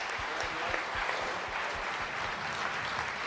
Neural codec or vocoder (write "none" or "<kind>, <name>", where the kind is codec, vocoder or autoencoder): none